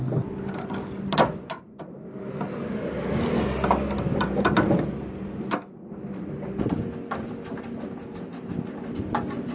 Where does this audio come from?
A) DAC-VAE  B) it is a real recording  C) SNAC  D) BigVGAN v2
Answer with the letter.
B